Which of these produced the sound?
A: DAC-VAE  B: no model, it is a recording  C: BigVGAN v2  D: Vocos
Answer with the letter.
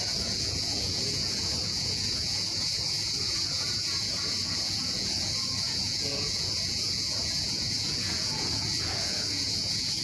D